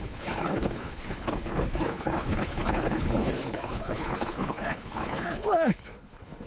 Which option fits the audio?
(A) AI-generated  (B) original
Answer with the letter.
A